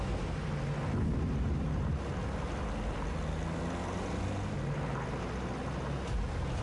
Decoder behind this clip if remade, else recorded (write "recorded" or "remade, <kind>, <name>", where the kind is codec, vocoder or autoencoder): recorded